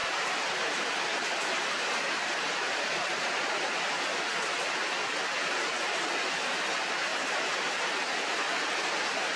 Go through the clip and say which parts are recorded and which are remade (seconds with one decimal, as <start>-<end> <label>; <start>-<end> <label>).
0.0-3.3 remade; 3.3-7.1 recorded; 7.1-7.9 remade; 7.9-9.4 recorded